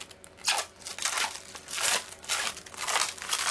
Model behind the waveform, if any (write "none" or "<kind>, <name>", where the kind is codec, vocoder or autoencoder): none